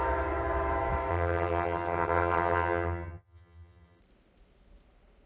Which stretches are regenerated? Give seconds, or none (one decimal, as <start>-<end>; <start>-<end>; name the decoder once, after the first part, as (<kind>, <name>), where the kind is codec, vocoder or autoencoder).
1.1-4.0 (vocoder, HiFi-GAN)